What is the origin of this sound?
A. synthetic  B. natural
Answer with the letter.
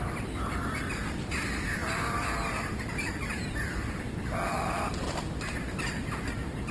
B